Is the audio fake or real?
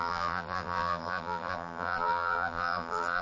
fake